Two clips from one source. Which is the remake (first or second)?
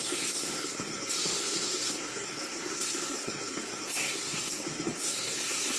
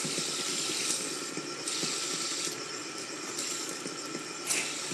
first